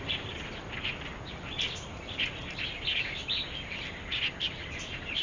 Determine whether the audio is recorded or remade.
recorded